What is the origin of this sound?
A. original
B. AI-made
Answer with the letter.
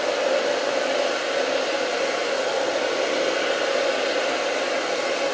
A